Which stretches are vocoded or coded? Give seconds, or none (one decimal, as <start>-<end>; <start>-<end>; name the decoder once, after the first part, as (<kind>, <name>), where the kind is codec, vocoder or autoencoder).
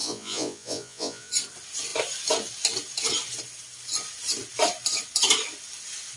0.0-1.3 (vocoder, Vocos)